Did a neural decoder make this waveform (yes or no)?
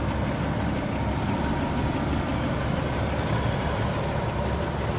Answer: no